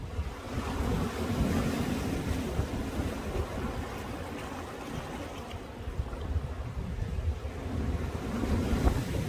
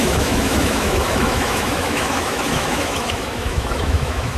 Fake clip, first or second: second